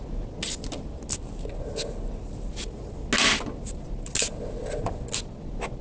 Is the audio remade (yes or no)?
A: no